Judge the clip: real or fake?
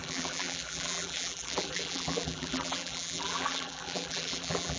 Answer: fake